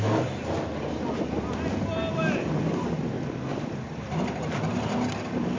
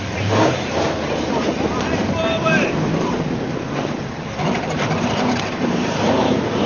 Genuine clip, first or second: first